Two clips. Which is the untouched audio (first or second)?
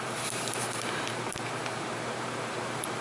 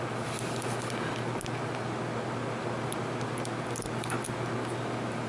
second